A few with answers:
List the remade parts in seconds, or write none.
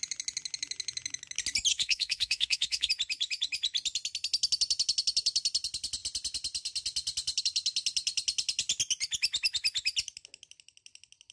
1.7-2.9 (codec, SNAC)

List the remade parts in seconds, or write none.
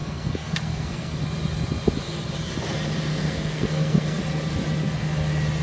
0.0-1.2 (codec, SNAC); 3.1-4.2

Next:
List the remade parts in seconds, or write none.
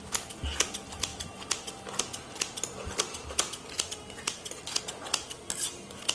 none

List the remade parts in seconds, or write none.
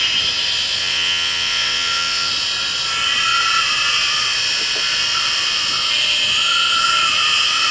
0.8-2.3 (vocoder, WaveNeXt)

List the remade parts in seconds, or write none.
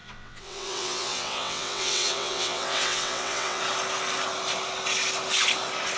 0.0-3.6 (vocoder, WaveNeXt)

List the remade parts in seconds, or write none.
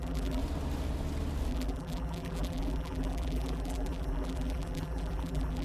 0.0-0.4 (vocoder, BigVGAN v2); 1.5-5.6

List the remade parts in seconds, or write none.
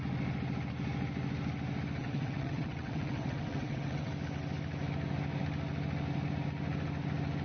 2.0-4.1 (vocoder, WaveNeXt)